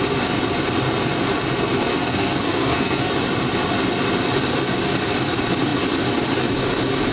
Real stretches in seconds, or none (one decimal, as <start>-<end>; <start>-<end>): 0.0-1.9; 3.1-7.1